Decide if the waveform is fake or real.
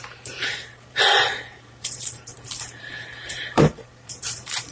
fake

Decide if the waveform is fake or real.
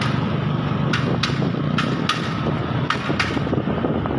real